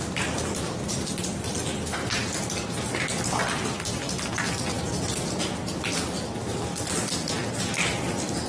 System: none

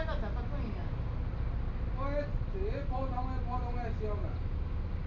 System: none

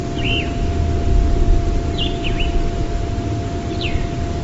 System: none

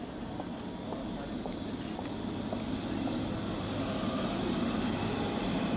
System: none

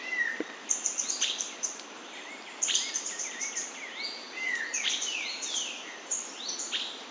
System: vocoder, BigVGAN v2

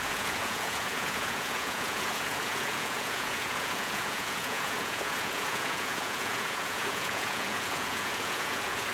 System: vocoder, Vocos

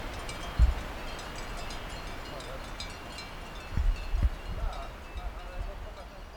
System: none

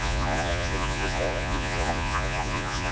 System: vocoder, Vocos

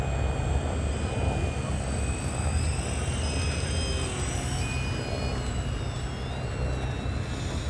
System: none